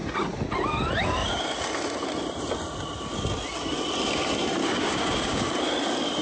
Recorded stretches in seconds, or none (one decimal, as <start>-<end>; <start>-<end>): 0.0-4.6; 5.5-6.2